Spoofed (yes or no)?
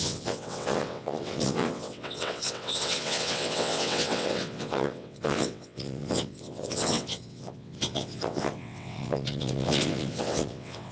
yes